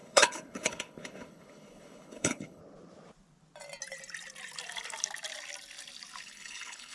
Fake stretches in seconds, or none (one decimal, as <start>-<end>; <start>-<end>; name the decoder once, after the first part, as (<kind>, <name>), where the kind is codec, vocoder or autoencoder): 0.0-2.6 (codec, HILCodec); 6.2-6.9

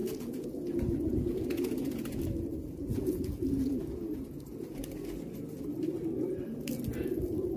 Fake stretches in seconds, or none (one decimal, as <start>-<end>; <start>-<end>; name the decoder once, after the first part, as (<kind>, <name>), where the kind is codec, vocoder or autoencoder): 0.0-2.2 (vocoder, Vocos); 2.6-4.8

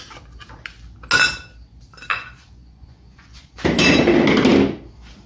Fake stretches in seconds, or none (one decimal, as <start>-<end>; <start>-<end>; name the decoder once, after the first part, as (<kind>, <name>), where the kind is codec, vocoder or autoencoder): 2.1-3.5 (vocoder, Vocos)

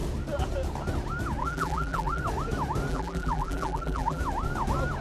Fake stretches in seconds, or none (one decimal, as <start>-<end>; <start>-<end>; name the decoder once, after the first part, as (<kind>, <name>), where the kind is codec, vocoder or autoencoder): 1.4-2.2 (vocoder, BigVGAN v2); 2.9-4.2